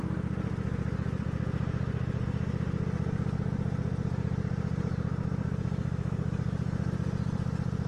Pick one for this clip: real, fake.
real